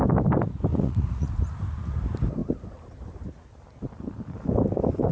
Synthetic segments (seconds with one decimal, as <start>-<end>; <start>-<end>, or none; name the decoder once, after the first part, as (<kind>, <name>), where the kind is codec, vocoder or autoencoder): 0.7-1.3 (vocoder, Vocos)